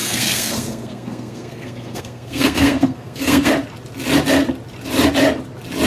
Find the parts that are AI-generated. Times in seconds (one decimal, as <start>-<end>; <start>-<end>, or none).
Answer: 0.0-3.5